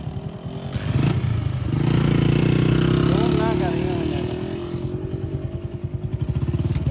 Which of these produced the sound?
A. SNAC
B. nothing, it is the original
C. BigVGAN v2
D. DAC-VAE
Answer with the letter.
B